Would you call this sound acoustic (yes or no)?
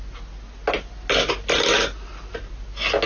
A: yes